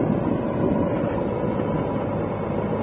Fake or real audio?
real